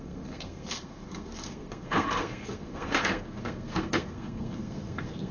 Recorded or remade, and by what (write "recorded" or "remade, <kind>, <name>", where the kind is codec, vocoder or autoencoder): remade, codec, SNAC